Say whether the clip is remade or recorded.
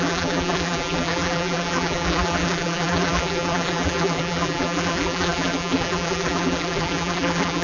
remade